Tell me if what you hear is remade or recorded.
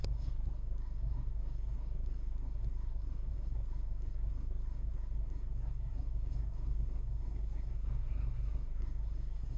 remade